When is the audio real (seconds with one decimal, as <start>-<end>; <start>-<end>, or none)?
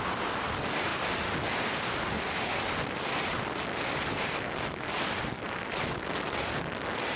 0.0-7.2